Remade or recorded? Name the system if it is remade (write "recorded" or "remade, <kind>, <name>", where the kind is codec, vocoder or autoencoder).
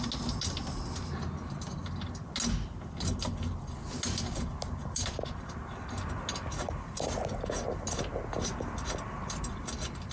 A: recorded